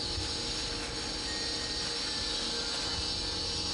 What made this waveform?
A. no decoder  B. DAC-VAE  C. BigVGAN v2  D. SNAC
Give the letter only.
A